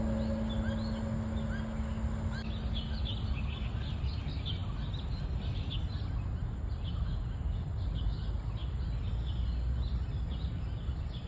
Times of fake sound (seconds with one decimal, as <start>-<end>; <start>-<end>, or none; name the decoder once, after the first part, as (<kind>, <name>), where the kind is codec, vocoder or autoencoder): 8.6-9.1 (vocoder, BigVGAN v2)